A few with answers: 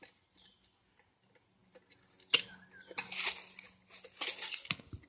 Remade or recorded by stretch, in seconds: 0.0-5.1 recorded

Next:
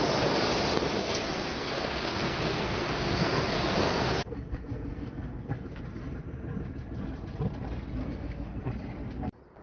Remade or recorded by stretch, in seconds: 0.0-1.0 recorded; 1.0-5.8 remade; 5.8-8.0 recorded; 8.0-8.7 remade; 8.7-9.6 recorded

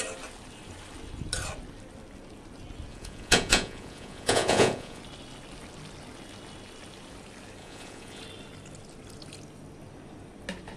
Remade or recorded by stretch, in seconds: 0.0-2.9 recorded; 2.9-5.0 remade; 5.0-7.6 recorded; 7.6-8.2 remade; 8.2-10.8 recorded

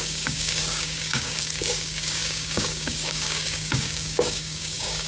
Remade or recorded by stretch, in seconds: 0.0-5.1 remade

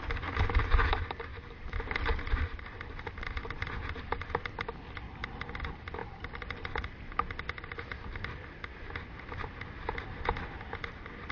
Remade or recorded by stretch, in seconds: 0.0-11.3 recorded

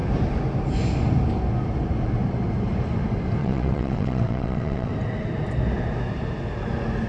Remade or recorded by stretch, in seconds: 0.0-3.4 recorded; 3.4-4.9 remade; 4.9-7.1 recorded